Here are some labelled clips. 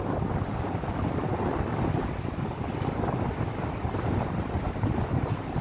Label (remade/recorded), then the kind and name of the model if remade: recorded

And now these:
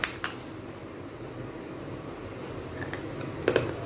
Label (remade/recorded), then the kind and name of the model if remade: recorded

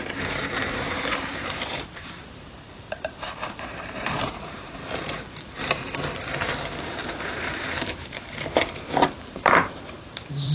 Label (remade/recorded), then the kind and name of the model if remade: remade, vocoder, BigVGAN v2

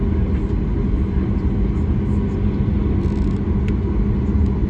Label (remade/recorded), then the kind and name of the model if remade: recorded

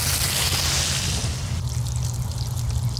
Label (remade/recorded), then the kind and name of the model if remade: recorded